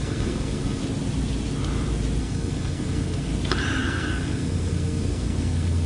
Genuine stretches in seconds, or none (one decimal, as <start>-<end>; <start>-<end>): 0.8-2.2; 3.3-3.8